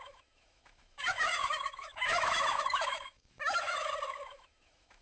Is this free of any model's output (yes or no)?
no